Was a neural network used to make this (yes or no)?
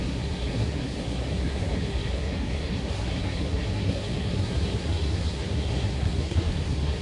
yes